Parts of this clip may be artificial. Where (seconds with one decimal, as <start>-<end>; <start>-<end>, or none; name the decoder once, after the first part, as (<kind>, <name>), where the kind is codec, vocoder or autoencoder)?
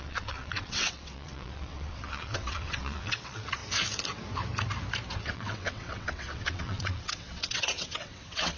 0.0-3.6 (vocoder, WaveNeXt); 5.1-8.6